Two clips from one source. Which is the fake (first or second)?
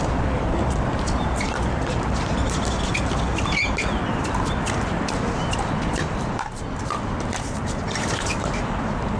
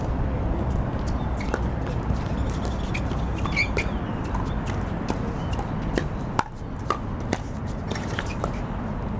first